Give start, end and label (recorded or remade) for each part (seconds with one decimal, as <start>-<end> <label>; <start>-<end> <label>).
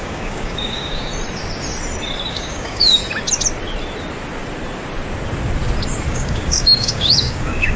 0.0-1.1 remade; 1.1-2.3 recorded; 2.3-3.0 remade; 3.0-6.1 recorded; 6.1-7.8 remade